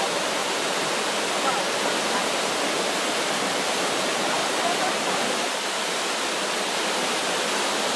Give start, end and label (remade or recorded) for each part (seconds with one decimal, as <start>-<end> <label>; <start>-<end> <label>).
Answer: 0.0-0.4 remade; 0.4-2.3 recorded; 2.3-8.0 remade